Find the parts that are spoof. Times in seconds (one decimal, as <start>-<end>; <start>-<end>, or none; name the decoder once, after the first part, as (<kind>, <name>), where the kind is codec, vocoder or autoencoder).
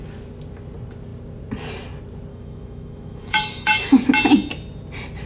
2.3-3.9 (autoencoder, DAC-VAE)